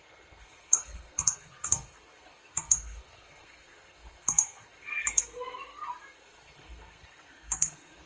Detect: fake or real fake